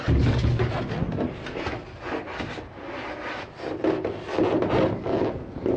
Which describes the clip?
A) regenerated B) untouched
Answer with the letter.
B